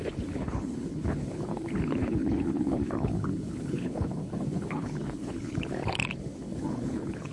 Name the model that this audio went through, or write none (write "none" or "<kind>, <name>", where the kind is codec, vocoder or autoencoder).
codec, HILCodec